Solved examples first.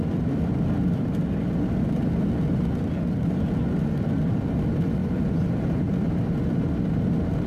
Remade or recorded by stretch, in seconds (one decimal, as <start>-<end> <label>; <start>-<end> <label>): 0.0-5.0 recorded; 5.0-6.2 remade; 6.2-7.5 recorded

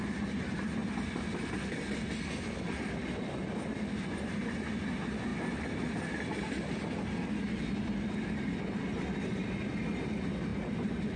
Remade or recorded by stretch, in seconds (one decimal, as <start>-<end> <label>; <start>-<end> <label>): 0.0-10.5 recorded; 10.5-11.2 remade

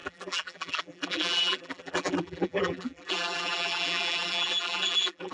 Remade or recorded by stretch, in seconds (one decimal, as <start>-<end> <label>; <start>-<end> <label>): 0.0-5.3 remade

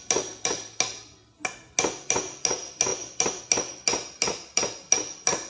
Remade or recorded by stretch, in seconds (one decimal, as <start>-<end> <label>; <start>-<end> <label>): 0.0-5.5 recorded

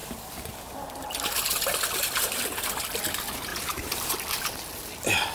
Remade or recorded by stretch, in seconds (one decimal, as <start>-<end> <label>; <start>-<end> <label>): 0.0-1.3 remade; 1.3-3.5 recorded; 3.5-4.1 remade; 4.1-5.3 recorded

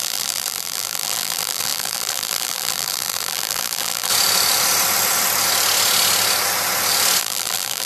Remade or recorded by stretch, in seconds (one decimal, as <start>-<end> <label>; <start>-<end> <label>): 0.0-4.1 remade; 4.1-7.2 recorded; 7.2-7.9 remade

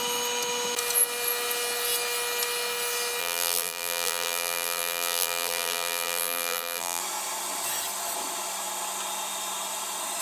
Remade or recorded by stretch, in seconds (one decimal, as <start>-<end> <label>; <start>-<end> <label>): 0.0-3.2 recorded; 3.2-7.0 remade; 7.0-10.2 recorded